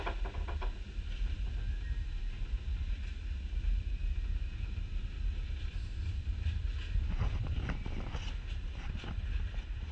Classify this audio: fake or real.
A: real